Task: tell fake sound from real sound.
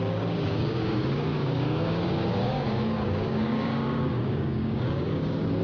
fake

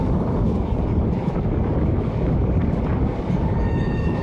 fake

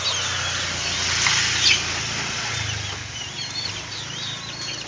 real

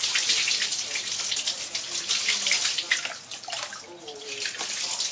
real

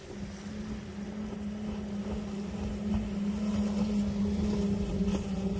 real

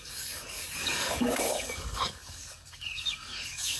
fake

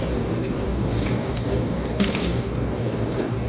fake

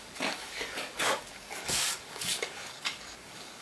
fake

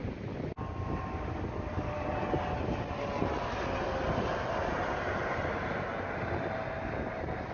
real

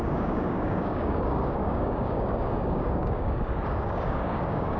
fake